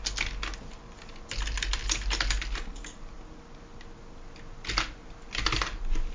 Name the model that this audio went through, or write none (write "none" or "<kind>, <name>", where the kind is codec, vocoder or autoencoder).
none